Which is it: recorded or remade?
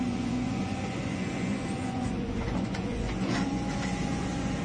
remade